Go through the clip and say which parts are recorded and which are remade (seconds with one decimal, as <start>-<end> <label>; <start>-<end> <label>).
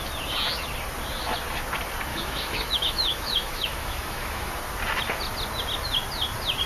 0.0-2.1 recorded; 2.1-4.5 remade; 4.5-6.7 recorded